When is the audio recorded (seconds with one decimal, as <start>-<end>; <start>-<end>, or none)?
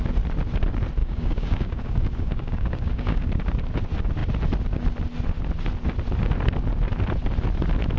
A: 0.0-1.0; 3.3-8.0